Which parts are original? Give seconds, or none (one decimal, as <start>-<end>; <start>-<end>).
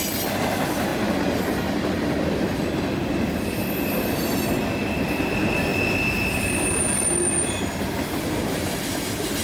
0.0-9.4